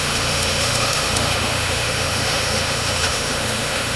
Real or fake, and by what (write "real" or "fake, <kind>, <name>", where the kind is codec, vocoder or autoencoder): fake, autoencoder, DAC-VAE